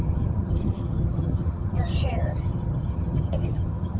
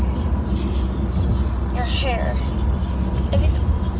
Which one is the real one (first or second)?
second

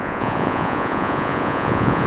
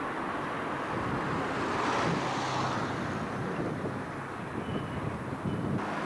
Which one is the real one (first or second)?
second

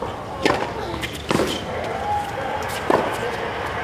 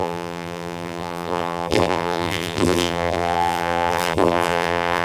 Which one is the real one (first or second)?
first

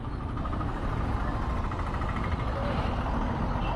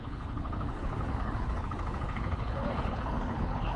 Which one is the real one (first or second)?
first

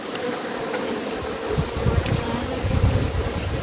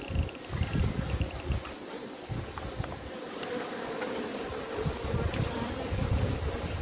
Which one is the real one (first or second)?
first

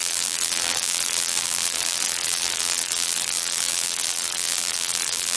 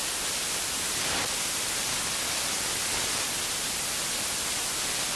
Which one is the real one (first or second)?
second